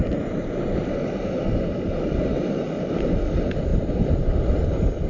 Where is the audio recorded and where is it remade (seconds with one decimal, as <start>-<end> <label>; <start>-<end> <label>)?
0.0-2.9 remade; 2.9-3.7 recorded; 3.7-5.1 remade